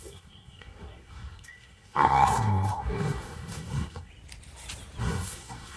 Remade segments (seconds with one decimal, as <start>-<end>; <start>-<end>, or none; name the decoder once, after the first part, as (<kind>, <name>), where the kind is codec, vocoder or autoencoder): 0.0-4.1 (codec, SNAC); 5.0-5.8